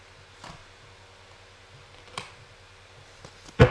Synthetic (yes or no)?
no